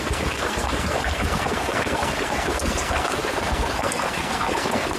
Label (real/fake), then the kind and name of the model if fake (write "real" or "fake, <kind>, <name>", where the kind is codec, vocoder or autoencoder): fake, codec, SNAC